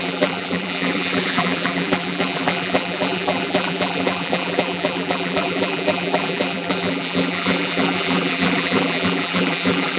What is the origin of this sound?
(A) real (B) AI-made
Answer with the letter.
B